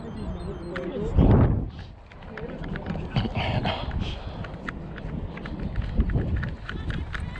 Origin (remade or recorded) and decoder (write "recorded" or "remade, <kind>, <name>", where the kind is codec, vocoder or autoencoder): recorded